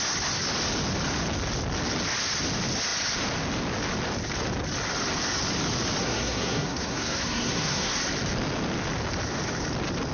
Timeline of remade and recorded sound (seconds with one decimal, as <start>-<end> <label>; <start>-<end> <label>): 0.0-6.0 recorded; 6.0-8.0 remade; 8.0-10.1 recorded